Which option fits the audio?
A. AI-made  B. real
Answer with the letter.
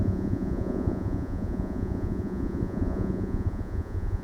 A